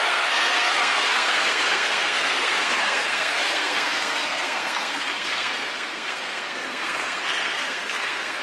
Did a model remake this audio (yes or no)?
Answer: yes